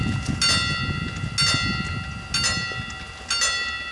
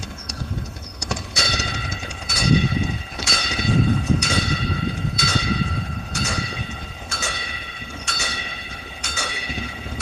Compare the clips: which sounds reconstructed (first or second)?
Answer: second